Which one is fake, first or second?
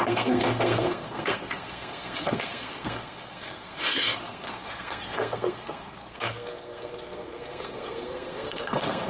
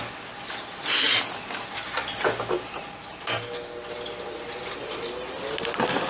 first